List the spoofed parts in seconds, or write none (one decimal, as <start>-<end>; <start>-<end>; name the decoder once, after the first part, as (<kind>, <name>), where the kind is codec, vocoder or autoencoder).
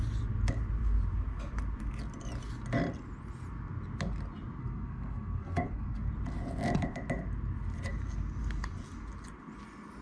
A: 4.6-6.1 (codec, SNAC)